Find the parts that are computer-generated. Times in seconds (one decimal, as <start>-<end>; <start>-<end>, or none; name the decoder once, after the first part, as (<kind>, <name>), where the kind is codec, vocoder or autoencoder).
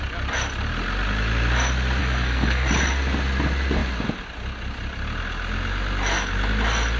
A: 2.0-2.7 (codec, SNAC)